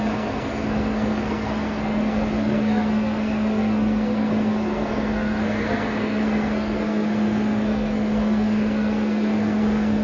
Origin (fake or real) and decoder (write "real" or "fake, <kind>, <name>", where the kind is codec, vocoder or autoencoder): fake, codec, SNAC